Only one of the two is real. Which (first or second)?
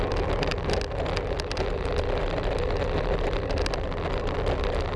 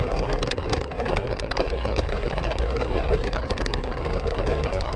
first